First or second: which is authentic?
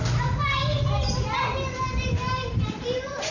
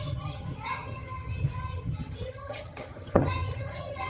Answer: first